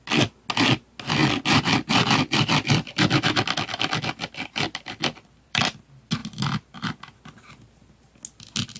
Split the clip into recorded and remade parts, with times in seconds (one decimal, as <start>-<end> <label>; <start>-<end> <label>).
0.0-1.2 recorded; 1.2-5.6 remade; 5.6-8.8 recorded